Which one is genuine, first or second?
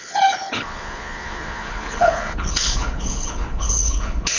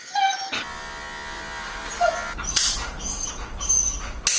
second